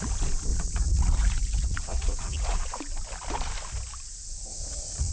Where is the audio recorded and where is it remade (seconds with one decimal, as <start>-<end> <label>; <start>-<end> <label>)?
0.0-0.5 recorded; 0.5-2.8 remade; 2.8-4.5 recorded; 4.5-5.1 remade